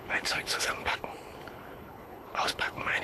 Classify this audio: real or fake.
fake